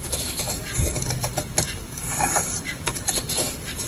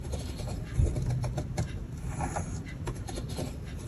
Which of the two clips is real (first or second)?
second